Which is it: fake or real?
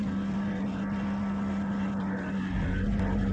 real